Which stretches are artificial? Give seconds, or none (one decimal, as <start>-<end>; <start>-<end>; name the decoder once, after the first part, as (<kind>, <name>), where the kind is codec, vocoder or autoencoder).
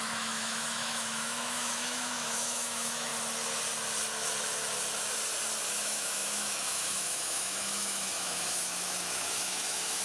0.0-3.1 (autoencoder, DAC-VAE); 5.7-10.0